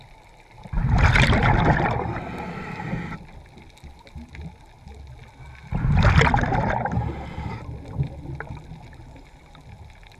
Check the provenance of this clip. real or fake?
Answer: real